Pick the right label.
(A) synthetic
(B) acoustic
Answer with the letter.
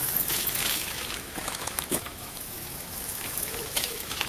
A